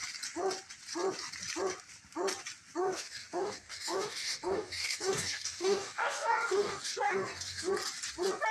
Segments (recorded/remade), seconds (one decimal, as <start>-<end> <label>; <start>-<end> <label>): 0.0-2.8 recorded; 2.8-7.7 remade; 7.7-8.5 recorded